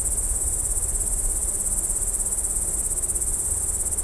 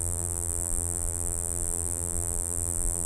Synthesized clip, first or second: second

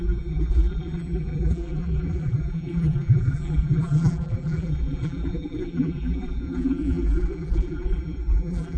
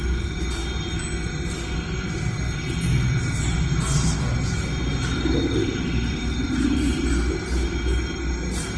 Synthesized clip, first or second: first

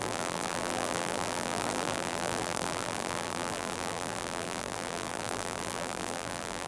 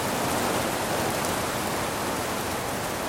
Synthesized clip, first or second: first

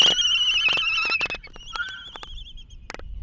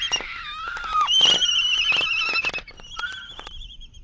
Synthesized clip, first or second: second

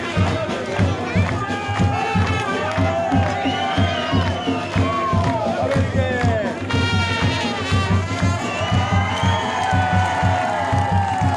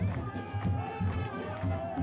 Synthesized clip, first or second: second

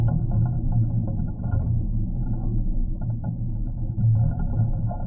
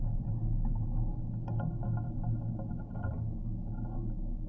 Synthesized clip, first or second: first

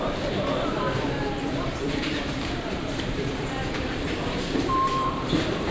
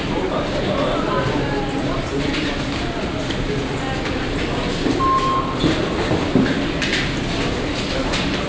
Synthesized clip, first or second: first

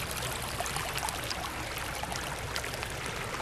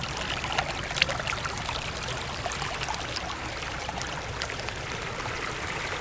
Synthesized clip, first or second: second